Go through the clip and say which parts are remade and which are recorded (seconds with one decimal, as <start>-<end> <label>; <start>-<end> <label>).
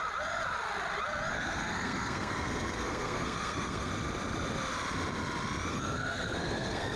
0.0-1.3 recorded; 1.3-3.9 remade; 3.9-5.7 recorded; 5.7-7.0 remade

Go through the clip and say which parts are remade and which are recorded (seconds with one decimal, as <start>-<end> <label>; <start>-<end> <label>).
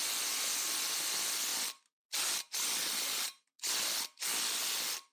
0.0-5.1 recorded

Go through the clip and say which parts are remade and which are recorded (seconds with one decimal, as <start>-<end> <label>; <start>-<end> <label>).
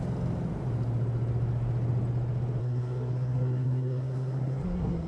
0.0-2.6 recorded; 2.6-5.1 remade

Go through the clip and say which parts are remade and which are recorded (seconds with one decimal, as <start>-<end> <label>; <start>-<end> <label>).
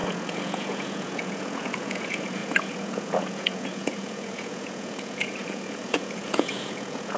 0.0-7.2 remade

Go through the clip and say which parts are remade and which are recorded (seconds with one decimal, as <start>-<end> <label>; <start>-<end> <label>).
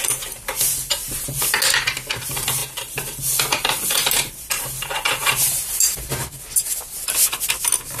0.0-8.0 recorded